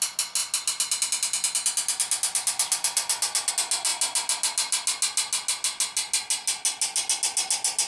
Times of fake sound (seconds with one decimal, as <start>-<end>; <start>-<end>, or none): none